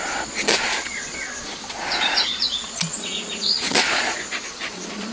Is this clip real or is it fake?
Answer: fake